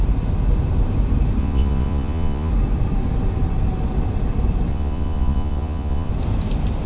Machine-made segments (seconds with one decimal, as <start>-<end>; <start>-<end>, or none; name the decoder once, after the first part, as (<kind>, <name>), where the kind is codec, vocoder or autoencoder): 1.4-2.5 (vocoder, Vocos); 4.7-6.1